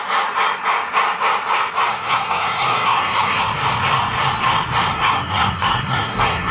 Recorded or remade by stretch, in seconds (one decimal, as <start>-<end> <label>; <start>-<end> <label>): 0.0-1.9 recorded; 1.9-3.4 remade; 3.4-4.9 recorded; 4.9-6.5 remade